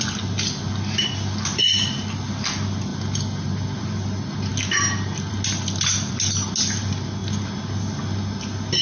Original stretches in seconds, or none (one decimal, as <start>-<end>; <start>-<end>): 0.0-8.8